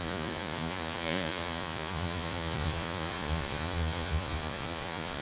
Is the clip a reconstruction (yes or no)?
yes